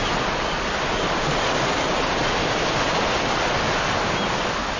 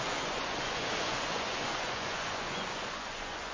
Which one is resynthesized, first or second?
second